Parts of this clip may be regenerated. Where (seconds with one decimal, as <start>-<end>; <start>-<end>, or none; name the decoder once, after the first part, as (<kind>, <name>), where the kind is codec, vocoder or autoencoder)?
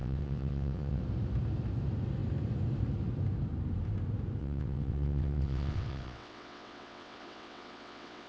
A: 0.0-1.0 (vocoder, WaveNeXt); 4.4-8.3